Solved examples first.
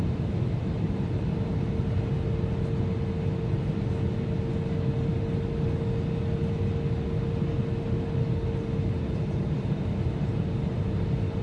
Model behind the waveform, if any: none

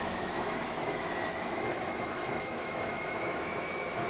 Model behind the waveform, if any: autoencoder, DAC-VAE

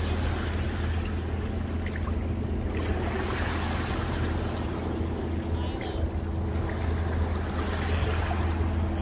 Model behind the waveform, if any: none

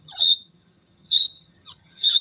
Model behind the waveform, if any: vocoder, HiFi-GAN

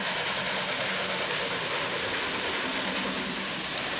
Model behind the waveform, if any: none